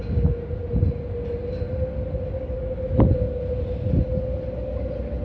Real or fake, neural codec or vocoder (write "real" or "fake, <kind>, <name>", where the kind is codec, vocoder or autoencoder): real